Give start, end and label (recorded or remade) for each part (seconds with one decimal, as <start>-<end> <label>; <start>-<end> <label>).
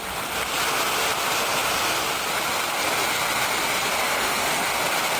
0.0-4.0 recorded; 4.0-4.6 remade; 4.6-5.2 recorded